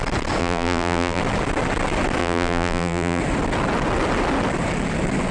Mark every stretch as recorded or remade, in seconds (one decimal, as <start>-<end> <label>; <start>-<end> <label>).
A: 0.0-0.4 recorded; 0.4-1.2 remade; 1.2-2.2 recorded; 2.2-3.2 remade; 3.2-5.3 recorded